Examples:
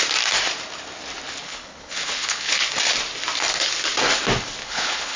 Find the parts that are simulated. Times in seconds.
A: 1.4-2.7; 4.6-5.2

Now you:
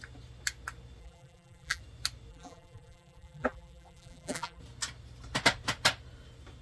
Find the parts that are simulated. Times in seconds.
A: 1.0-1.8; 2.3-4.6